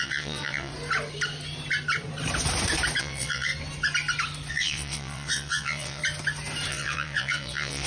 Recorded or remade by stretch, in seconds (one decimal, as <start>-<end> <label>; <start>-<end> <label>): 0.0-0.7 remade; 0.7-3.0 recorded; 3.0-3.5 remade; 3.5-4.5 recorded; 4.5-6.0 remade; 6.0-6.7 recorded; 6.7-7.9 remade